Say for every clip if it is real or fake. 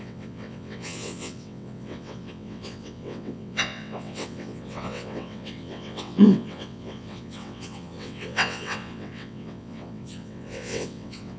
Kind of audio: fake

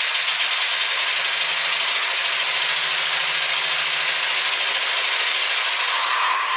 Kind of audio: real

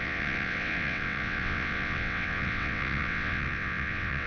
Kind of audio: fake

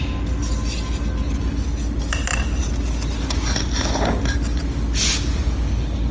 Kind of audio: real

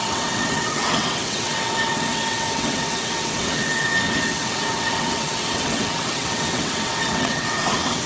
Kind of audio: fake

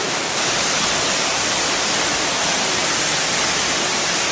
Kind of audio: real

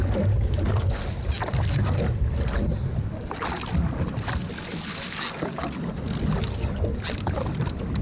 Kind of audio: real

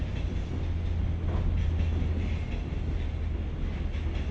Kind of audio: real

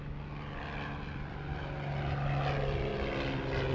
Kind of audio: real